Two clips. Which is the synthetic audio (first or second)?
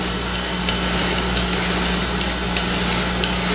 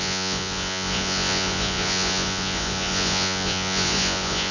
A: second